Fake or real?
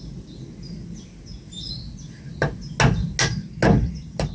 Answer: real